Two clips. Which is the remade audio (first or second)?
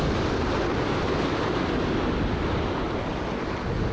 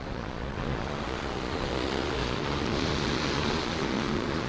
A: second